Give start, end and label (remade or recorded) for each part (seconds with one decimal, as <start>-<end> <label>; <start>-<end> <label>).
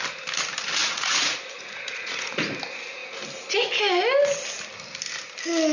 0.0-0.8 recorded; 0.8-2.5 remade; 2.5-5.7 recorded